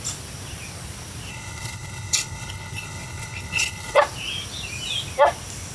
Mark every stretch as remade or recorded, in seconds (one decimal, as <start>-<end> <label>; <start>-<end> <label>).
0.0-1.3 recorded; 1.3-4.0 remade; 4.0-5.7 recorded

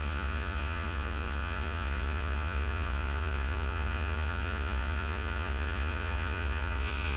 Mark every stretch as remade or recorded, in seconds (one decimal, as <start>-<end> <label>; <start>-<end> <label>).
0.0-7.2 remade

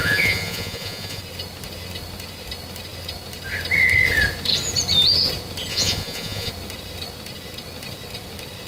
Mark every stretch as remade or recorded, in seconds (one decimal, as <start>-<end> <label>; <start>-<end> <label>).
0.0-1.2 remade; 1.2-5.7 recorded; 5.7-6.5 remade; 6.5-8.7 recorded